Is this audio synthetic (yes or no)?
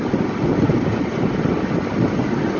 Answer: no